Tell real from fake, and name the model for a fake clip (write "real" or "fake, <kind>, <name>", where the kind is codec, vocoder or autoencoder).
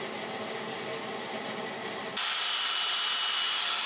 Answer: real